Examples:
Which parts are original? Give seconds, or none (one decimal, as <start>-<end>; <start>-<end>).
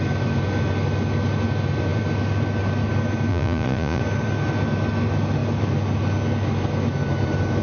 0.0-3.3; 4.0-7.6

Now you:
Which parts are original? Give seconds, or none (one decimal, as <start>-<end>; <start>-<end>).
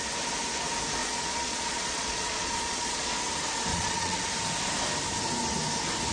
0.0-1.0; 3.2-3.7; 4.2-6.1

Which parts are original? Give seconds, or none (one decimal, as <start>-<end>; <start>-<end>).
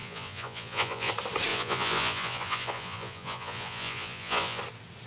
1.1-1.5; 4.6-5.1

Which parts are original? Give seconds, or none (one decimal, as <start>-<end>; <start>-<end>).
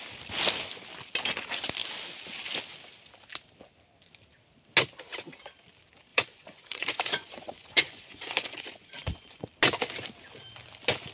0.0-6.1; 9.4-11.1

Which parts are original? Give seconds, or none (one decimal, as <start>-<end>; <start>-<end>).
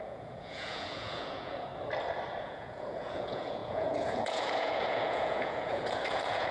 1.7-2.4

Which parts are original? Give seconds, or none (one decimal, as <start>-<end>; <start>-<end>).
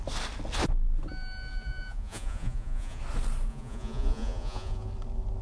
0.0-1.5; 3.0-3.5; 4.9-5.4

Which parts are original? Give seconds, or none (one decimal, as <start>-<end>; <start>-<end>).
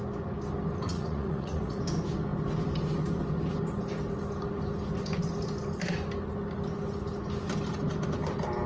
0.0-0.9; 1.8-8.7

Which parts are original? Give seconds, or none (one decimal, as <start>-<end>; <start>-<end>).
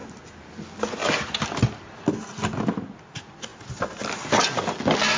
0.0-5.2